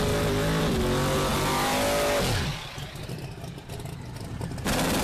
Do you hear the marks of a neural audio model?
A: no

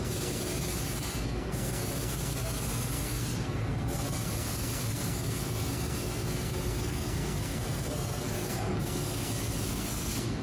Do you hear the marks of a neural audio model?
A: yes